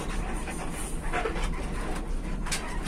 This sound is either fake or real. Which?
real